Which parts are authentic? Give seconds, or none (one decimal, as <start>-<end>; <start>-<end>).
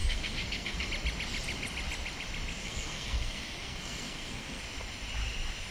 0.9-2.6; 4.6-5.7